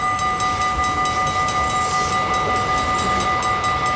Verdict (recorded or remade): recorded